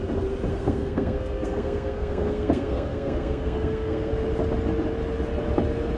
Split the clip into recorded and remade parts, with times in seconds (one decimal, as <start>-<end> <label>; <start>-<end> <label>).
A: 0.0-0.5 recorded; 0.5-4.1 remade; 4.1-6.0 recorded